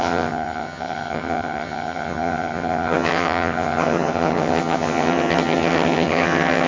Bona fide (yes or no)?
no